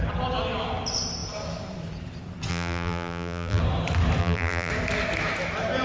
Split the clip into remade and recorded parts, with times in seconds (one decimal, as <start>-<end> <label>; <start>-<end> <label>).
0.0-2.5 recorded; 2.5-3.6 remade; 3.6-4.2 recorded; 4.2-4.7 remade; 4.7-5.8 recorded

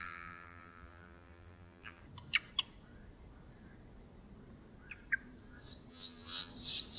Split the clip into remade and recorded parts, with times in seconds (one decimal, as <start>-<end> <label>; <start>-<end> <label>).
0.0-2.0 remade; 2.0-5.9 recorded; 5.9-6.5 remade; 6.5-7.0 recorded

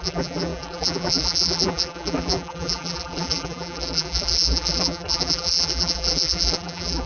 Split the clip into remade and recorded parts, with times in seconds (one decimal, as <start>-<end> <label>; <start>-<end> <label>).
0.0-7.1 remade